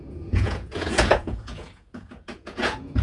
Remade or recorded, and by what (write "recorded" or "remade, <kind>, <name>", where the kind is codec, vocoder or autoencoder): remade, vocoder, Vocos